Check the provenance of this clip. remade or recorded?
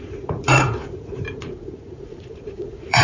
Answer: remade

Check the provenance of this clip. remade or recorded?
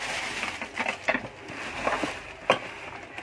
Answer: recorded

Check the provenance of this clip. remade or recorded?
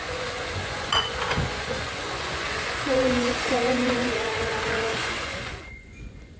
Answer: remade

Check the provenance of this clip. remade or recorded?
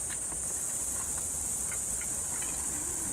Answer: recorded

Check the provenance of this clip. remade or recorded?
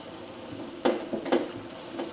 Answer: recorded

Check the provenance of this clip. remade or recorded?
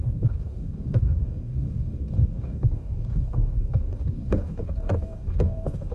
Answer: remade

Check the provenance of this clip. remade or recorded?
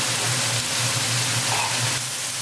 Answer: recorded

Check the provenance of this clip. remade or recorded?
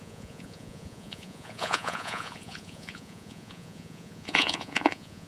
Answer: remade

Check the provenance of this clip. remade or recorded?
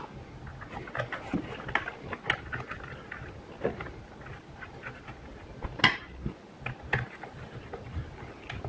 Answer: recorded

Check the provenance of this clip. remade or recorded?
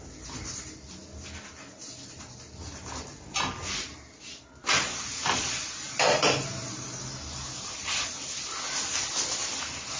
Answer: recorded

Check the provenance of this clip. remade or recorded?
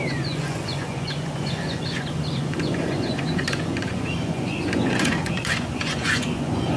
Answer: remade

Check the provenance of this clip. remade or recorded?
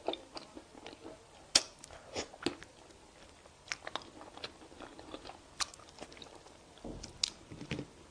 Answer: recorded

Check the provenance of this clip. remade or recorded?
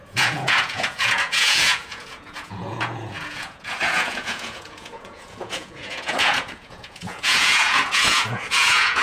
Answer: remade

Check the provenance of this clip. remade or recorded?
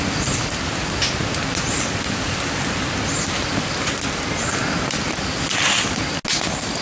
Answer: recorded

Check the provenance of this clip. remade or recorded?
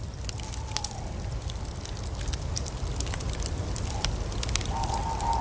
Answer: recorded